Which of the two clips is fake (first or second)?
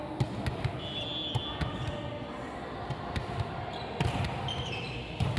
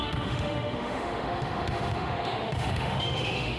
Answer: second